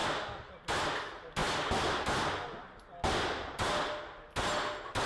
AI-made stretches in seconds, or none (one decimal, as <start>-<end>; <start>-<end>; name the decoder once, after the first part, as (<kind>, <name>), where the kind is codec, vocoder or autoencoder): 0.0-0.7 (vocoder, BigVGAN v2)